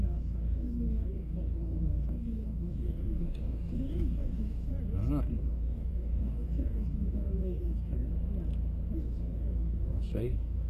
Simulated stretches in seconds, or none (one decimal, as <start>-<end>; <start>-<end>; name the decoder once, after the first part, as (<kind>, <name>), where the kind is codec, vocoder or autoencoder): 0.0-4.7 (codec, DAC); 5.2-8.1; 9.0-10.7